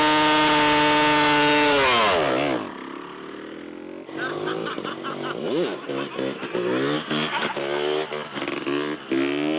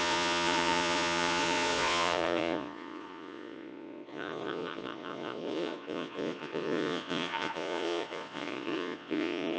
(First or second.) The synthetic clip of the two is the second